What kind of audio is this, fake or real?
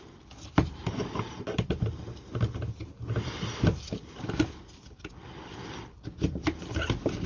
real